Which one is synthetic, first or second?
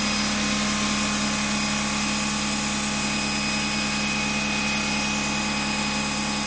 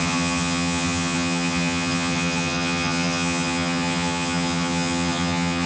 second